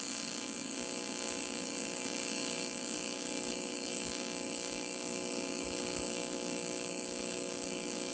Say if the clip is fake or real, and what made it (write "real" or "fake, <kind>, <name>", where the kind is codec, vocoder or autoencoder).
fake, codec, DAC